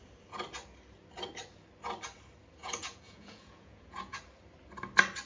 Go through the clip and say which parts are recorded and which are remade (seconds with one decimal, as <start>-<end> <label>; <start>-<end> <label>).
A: 0.0-2.6 recorded; 2.6-4.2 remade; 4.2-5.3 recorded